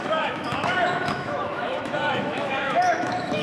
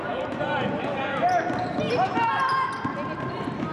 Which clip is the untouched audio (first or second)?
second